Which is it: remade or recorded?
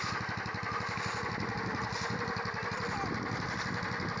recorded